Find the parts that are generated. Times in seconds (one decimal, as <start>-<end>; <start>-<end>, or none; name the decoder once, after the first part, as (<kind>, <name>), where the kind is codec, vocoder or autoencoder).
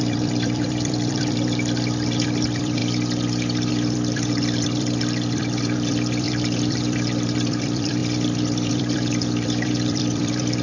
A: 0.0-2.8 (vocoder, BigVGAN v2); 3.7-8.0; 8.7-10.6